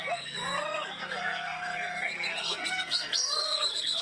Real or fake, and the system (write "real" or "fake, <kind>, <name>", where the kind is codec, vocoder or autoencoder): fake, codec, SNAC